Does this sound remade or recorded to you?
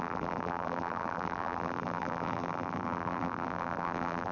remade